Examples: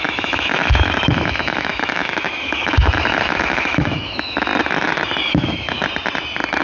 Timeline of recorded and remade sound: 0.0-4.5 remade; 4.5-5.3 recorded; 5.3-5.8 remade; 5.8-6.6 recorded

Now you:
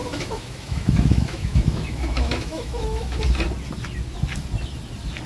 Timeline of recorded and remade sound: 0.0-3.2 remade; 3.2-5.3 recorded